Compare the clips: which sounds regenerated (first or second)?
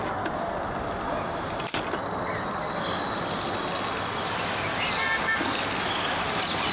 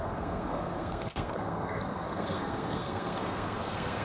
second